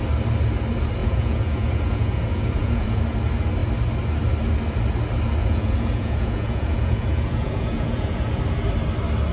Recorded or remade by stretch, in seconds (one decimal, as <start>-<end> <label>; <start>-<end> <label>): 0.0-1.0 recorded; 1.0-3.0 remade; 3.0-5.4 recorded; 5.4-8.4 remade; 8.4-9.3 recorded